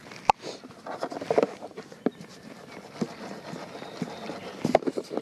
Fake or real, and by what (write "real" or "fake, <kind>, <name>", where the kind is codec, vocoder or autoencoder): real